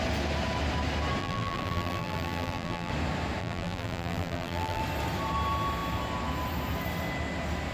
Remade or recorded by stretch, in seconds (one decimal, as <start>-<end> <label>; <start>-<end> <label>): 0.0-1.2 recorded; 1.2-2.9 remade; 2.9-3.4 recorded; 3.4-4.8 remade; 4.8-7.7 recorded